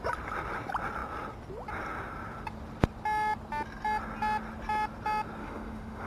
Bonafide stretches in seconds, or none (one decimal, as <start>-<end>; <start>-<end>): 0.0-5.4